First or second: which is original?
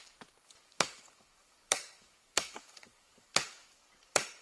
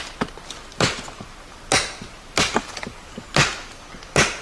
second